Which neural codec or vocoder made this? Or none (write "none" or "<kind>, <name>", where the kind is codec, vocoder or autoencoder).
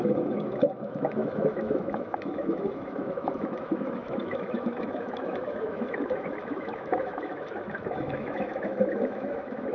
autoencoder, DAC-VAE